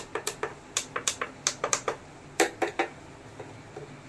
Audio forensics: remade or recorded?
recorded